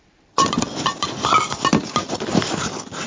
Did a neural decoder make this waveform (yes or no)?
no